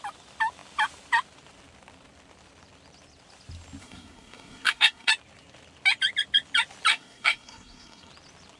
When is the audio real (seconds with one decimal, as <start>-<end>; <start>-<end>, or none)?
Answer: 0.0-3.8; 5.1-6.9; 8.1-8.6